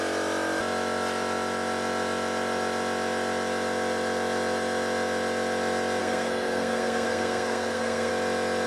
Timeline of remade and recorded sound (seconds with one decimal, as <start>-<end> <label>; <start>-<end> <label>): 0.0-6.0 recorded; 6.0-8.1 remade; 8.1-8.7 recorded

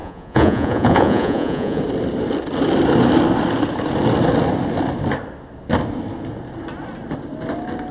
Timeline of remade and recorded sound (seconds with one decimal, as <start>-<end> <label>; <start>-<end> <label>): 0.0-1.8 remade; 1.8-7.9 recorded